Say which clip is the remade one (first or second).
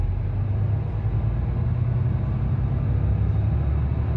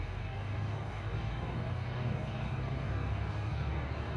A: second